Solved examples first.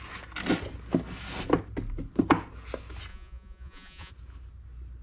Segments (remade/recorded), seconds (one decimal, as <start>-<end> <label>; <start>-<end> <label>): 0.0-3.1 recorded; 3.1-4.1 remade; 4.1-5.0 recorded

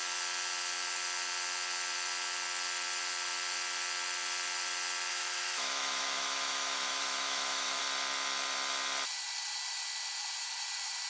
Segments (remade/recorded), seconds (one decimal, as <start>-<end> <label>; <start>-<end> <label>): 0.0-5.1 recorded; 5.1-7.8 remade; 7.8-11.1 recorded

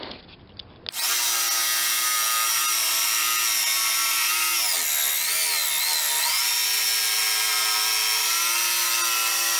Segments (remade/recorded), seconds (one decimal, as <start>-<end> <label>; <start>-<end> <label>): 0.0-9.6 recorded